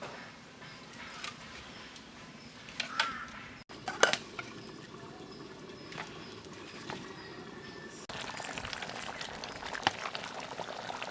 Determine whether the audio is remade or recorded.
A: recorded